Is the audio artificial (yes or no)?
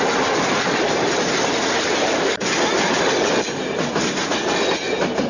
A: no